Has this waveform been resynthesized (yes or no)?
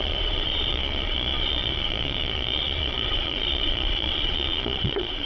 yes